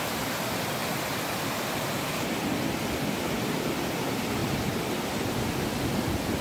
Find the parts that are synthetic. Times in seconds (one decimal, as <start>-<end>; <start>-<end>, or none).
0.0-0.8; 1.5-4.4